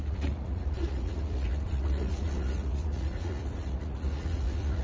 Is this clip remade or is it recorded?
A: remade